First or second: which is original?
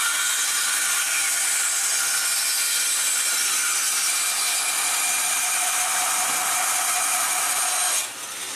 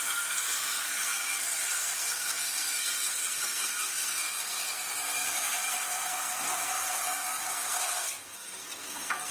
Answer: first